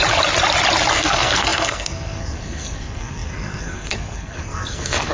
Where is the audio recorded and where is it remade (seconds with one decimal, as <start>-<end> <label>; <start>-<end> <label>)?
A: 0.0-0.9 recorded; 0.9-5.1 remade

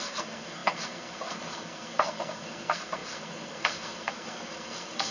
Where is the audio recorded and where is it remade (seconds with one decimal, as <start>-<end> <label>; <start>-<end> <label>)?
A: 0.0-5.1 remade